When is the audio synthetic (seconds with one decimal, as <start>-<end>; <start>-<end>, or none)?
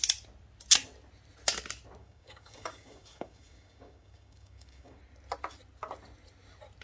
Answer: 2.0-5.0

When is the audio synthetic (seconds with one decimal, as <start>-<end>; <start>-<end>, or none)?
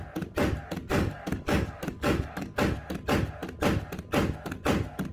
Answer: 0.9-2.6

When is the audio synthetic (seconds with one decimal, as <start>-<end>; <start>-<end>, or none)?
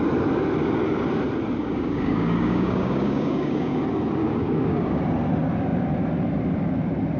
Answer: 1.6-3.8; 4.2-5.0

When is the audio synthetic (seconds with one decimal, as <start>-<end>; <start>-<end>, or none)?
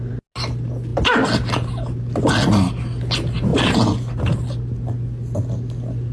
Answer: none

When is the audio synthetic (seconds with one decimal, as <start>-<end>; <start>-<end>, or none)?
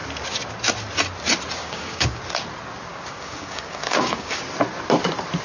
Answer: 1.6-2.2; 2.9-4.4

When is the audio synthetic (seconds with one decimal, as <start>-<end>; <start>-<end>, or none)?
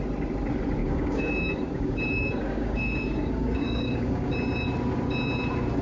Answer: 0.8-4.3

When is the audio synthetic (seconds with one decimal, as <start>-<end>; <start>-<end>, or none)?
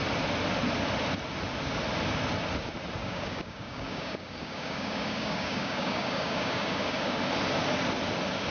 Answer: 3.0-7.2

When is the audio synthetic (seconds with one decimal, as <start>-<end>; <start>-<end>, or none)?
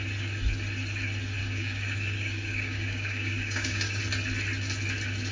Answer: 1.4-4.0